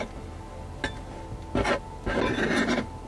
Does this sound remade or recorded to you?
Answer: recorded